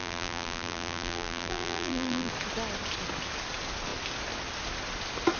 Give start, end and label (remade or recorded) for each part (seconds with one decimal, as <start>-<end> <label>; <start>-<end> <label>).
0.0-2.3 remade; 2.3-5.4 recorded